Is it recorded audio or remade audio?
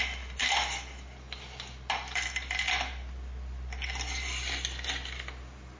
recorded